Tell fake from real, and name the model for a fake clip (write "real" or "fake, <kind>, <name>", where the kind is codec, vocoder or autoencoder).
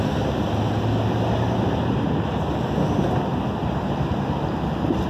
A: real